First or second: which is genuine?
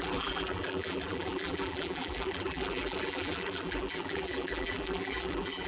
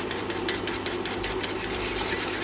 second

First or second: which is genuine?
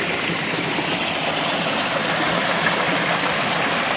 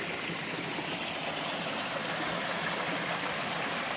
second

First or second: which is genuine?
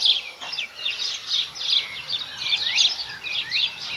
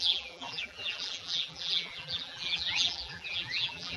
first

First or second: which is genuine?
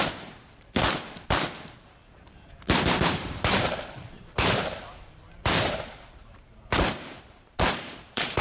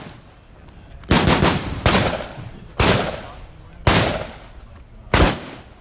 second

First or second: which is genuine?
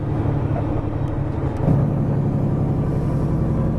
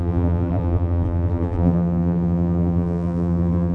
first